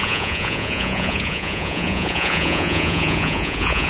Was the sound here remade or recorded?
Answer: remade